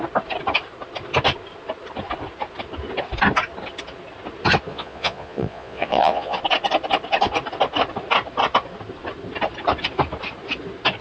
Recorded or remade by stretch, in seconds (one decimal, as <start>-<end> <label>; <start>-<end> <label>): 0.0-4.7 recorded; 4.7-6.4 remade; 6.4-11.0 recorded